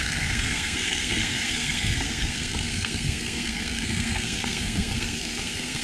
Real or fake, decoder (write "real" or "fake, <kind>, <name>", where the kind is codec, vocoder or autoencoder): fake, codec, SNAC